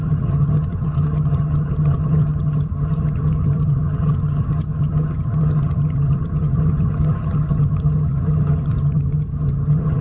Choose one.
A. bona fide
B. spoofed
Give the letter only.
B